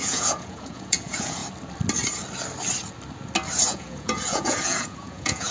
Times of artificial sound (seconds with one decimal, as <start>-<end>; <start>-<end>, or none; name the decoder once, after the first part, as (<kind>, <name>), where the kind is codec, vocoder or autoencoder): 0.0-1.4 (vocoder, Vocos); 3.6-5.5